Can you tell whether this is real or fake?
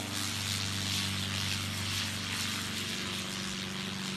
real